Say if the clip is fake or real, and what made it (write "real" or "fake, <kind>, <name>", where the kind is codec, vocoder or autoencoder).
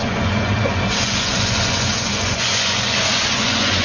fake, vocoder, Vocos